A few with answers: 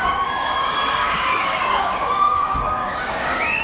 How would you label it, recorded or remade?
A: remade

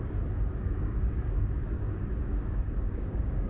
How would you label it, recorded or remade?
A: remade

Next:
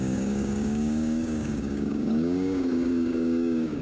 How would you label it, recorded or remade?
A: remade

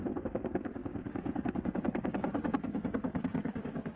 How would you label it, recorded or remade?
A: remade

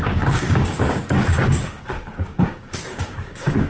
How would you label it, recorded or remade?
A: remade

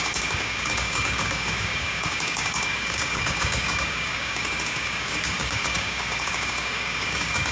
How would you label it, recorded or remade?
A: remade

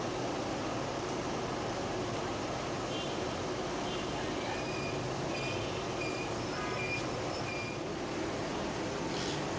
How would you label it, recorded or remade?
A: recorded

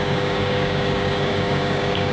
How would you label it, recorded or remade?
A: remade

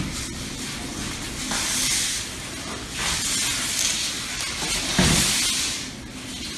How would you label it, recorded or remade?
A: recorded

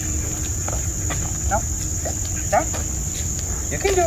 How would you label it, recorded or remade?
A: recorded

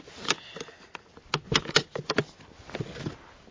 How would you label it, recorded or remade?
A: recorded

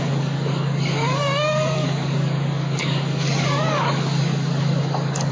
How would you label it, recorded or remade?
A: remade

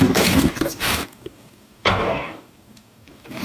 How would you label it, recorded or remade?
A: remade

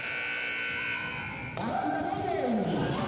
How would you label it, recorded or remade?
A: recorded